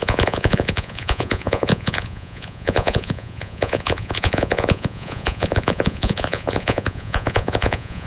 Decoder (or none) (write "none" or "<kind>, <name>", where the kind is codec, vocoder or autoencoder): vocoder, Vocos